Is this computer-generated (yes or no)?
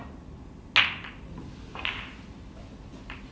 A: no